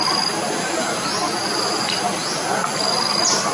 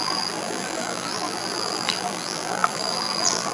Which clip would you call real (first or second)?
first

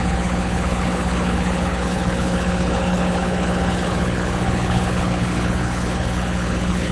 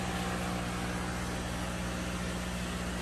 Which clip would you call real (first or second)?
second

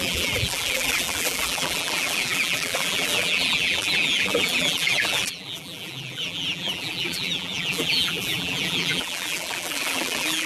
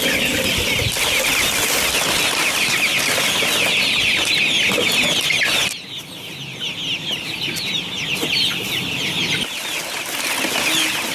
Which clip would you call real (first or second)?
second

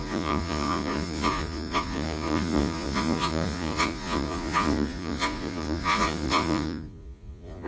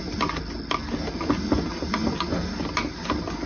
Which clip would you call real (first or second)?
second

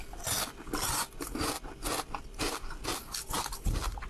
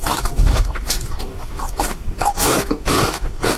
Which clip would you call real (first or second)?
first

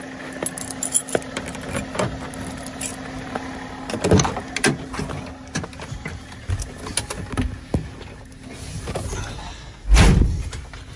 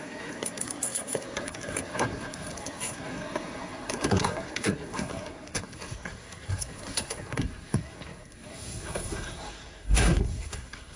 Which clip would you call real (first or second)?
first